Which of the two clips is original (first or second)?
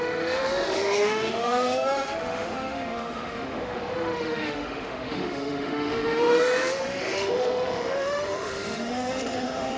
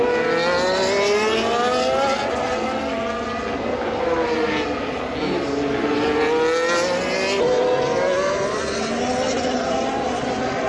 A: second